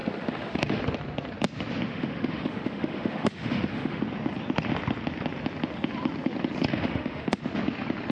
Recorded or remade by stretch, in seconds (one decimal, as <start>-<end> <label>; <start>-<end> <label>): 0.0-0.8 remade; 0.8-1.9 recorded; 1.9-4.0 remade; 4.0-6.7 recorded; 6.7-7.4 remade; 7.4-8.1 recorded